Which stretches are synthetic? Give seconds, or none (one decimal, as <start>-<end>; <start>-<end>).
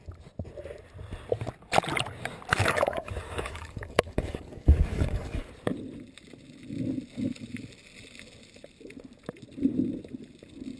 2.5-5.5